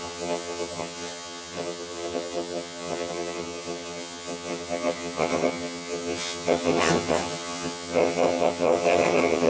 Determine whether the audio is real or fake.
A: fake